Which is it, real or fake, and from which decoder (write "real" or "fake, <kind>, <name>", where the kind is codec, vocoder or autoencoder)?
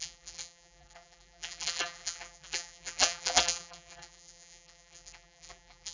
fake, vocoder, BigVGAN v2